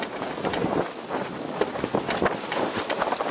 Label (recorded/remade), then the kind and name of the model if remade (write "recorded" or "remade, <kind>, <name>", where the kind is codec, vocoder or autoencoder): recorded